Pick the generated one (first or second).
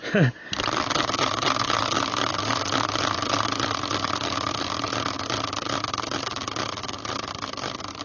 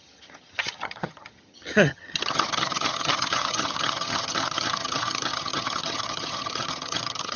second